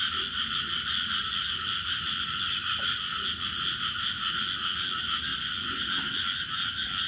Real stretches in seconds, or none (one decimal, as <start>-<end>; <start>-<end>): 0.0-7.1